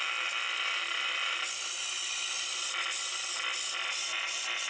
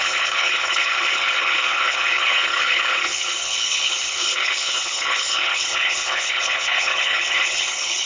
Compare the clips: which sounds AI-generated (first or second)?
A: second